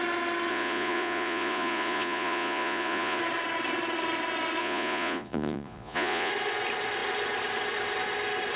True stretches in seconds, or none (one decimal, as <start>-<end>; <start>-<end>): 0.0-0.5; 3.2-4.6; 6.3-8.6